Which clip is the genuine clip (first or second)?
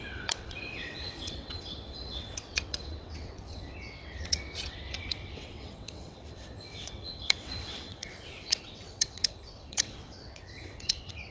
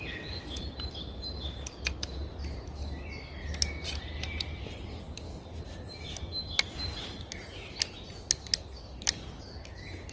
second